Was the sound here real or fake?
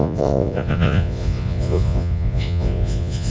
fake